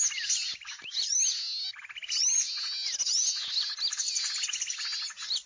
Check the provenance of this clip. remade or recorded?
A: recorded